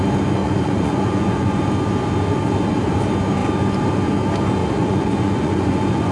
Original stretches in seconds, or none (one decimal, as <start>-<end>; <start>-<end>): 0.0-0.4; 1.6-4.6